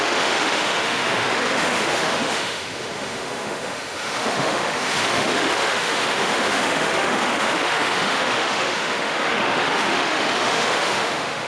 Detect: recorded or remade remade